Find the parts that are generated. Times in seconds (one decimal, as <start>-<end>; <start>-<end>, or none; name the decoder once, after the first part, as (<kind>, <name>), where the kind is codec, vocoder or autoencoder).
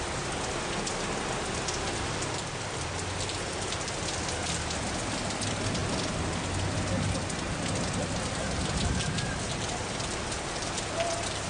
none